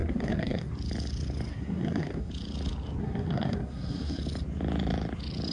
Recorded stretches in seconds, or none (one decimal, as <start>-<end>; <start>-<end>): 0.7-1.5; 2.3-3.0; 4.2-5.5